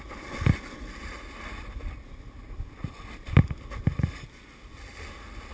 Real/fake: real